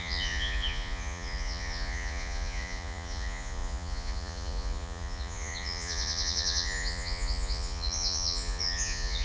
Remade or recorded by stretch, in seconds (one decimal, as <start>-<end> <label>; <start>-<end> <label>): 0.0-9.2 remade